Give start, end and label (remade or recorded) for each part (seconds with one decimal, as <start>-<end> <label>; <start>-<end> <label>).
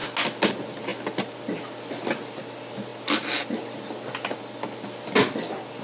0.0-5.8 recorded